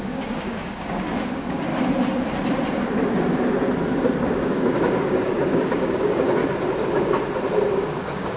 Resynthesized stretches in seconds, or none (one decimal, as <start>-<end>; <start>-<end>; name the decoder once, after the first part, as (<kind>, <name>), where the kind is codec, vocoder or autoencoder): 0.0-1.7 (codec, DAC); 4.4-6.4; 7.7-8.4

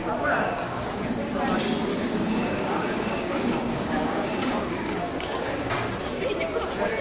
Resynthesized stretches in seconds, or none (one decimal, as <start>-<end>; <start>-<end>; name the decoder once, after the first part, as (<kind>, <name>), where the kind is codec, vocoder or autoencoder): 0.0-1.0 (codec, DAC); 1.9-5.7

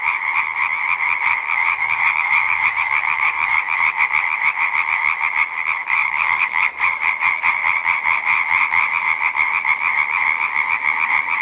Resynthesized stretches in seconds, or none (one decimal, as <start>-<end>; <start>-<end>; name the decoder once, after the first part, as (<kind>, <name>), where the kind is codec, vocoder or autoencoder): 1.3-3.6 (codec, DAC); 6.0-7.1

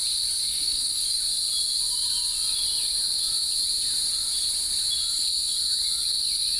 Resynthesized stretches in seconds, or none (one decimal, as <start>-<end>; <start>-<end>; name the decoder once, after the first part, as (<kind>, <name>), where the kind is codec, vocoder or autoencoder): 0.5-1.2 (codec, DAC)

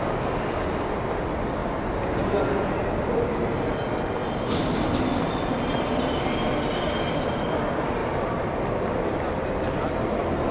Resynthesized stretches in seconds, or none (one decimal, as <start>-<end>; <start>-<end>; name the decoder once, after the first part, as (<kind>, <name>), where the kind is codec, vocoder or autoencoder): none

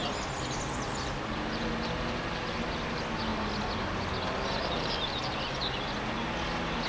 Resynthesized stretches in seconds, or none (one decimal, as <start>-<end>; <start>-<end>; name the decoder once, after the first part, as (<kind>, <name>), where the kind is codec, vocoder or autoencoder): none

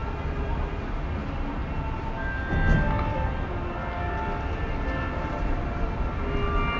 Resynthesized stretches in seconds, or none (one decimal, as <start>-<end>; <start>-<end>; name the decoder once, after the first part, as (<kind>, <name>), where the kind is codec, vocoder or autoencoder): none